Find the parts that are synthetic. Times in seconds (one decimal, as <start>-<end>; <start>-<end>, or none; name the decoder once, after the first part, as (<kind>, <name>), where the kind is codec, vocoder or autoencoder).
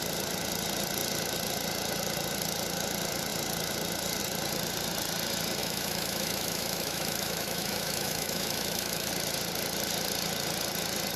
5.6-9.1 (autoencoder, DAC-VAE)